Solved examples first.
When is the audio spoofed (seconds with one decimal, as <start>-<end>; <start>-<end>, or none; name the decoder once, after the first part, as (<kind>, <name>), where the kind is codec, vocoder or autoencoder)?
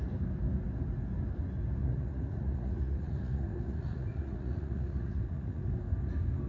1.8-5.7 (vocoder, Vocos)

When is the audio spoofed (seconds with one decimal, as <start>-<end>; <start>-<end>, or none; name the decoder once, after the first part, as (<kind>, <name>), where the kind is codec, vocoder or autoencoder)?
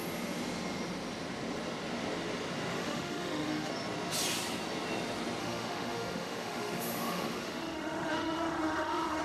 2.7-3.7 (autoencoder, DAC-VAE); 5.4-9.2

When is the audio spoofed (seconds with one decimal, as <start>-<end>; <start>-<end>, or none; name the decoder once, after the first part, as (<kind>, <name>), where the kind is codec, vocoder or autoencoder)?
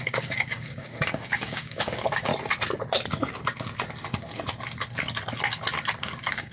0.0-2.3 (codec, DAC); 6.0-6.5